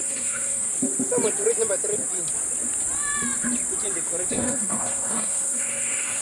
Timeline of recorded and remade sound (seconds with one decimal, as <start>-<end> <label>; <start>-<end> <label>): 0.0-0.7 remade; 0.7-4.3 recorded; 4.3-6.2 remade

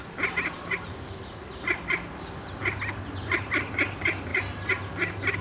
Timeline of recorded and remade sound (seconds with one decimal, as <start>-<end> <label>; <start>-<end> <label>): 0.0-2.6 remade; 2.6-3.2 recorded; 3.2-4.3 remade; 4.3-5.4 recorded

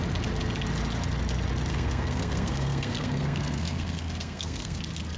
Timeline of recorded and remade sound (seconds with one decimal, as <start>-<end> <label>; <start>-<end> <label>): 0.0-1.7 recorded; 1.7-4.8 remade; 4.8-5.2 recorded

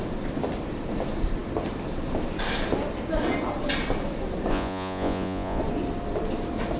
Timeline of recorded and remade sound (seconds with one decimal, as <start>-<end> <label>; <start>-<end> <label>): 0.0-4.5 recorded; 4.5-5.6 remade; 5.6-6.8 recorded